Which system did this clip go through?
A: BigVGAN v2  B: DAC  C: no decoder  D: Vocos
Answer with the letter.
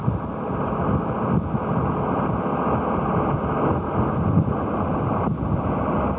C